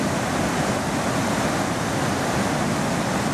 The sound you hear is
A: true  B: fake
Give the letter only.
A